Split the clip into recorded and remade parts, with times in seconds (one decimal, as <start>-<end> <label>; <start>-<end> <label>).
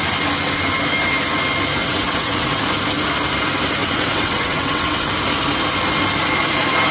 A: 0.0-1.8 recorded; 1.8-2.6 remade; 2.6-3.8 recorded; 3.8-5.1 remade; 5.1-6.9 recorded